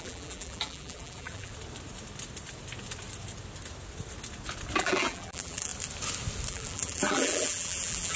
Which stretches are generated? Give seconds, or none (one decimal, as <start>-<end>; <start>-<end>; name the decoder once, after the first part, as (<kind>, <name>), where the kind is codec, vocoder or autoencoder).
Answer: 0.0-1.5 (vocoder, BigVGAN v2); 4.8-5.7; 6.5-8.2